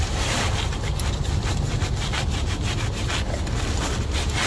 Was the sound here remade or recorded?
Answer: recorded